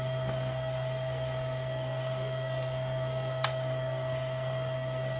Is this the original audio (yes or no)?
no